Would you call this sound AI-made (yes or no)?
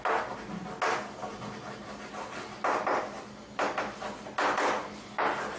no